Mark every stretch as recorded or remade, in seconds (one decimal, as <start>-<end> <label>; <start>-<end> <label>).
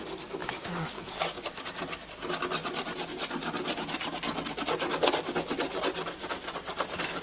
0.0-0.4 recorded; 0.4-1.4 remade; 1.4-7.2 recorded